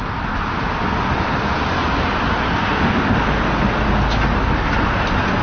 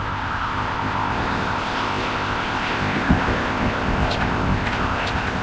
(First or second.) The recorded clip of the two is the first